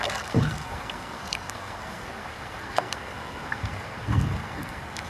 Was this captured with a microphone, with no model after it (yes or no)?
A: no